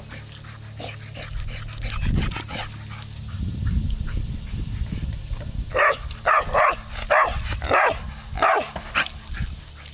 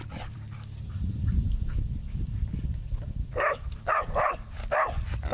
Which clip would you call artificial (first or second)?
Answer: second